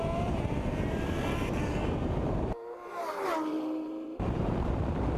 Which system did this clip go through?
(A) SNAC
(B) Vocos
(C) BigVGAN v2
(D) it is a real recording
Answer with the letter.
C